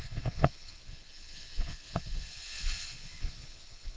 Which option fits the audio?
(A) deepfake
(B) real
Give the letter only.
A